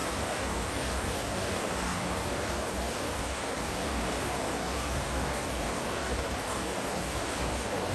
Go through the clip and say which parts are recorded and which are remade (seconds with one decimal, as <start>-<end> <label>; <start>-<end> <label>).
0.0-7.9 remade